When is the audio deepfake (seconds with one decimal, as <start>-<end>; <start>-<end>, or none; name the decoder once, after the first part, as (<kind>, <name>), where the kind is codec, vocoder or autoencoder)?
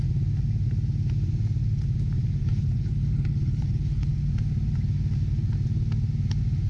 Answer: 2.4-4.1 (codec, HILCodec)